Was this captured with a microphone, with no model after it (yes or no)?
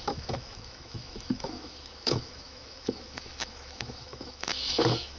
no